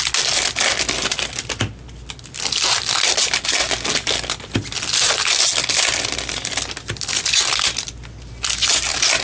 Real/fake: real